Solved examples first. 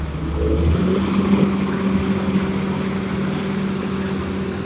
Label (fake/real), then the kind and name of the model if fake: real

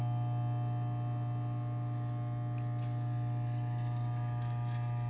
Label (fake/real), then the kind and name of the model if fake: real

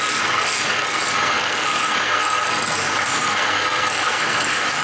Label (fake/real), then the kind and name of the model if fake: fake, codec, SNAC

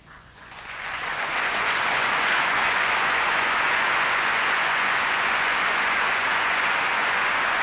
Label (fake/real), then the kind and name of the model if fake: fake, vocoder, Vocos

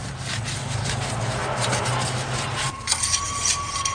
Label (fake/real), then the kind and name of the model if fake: real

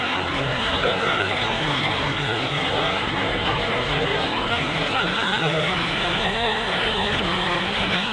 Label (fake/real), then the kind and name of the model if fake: fake, codec, SNAC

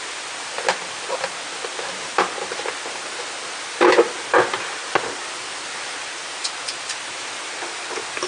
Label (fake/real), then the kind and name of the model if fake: real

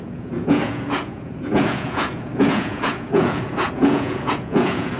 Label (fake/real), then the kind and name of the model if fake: fake, vocoder, Vocos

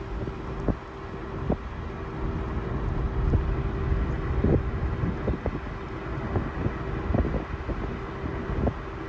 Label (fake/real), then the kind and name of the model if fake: real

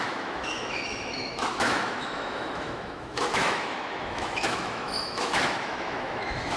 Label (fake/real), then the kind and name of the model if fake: fake, autoencoder, DAC-VAE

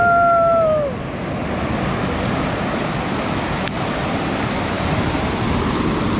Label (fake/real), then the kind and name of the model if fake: real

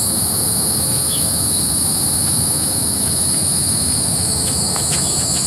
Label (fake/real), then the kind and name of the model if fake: fake, autoencoder, DAC-VAE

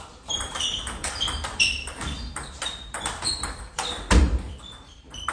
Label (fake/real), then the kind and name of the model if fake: fake, vocoder, BigVGAN v2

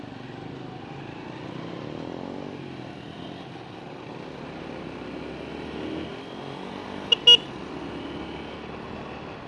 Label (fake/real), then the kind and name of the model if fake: real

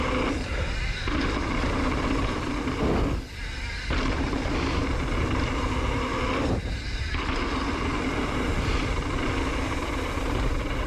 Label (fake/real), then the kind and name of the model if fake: real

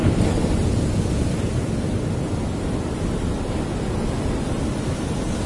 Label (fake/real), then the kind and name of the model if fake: real